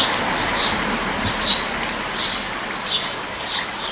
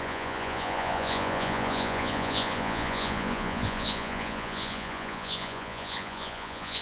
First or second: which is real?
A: first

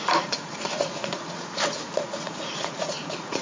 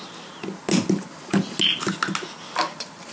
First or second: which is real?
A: second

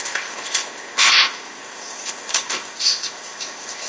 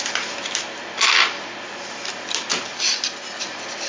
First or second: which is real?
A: second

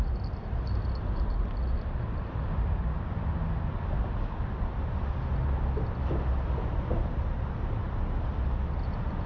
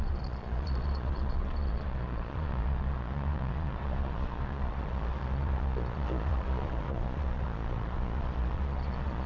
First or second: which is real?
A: first